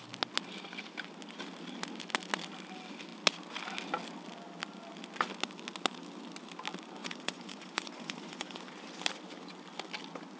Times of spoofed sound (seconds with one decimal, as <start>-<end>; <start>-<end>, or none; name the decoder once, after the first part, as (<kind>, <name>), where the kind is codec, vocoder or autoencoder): 7.0-8.7 (vocoder, Vocos)